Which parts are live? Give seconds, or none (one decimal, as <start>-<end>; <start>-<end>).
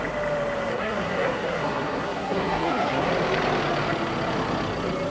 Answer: 0.0-0.7; 3.1-5.1